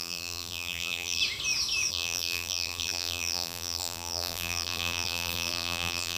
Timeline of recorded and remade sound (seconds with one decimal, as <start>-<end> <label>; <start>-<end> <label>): 0.0-1.2 remade; 1.2-1.9 recorded; 1.9-6.2 remade